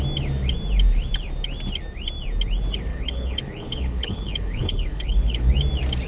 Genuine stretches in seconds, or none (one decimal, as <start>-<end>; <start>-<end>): 0.0-2.9; 5.5-6.1